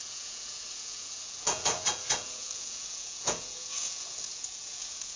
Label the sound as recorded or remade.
remade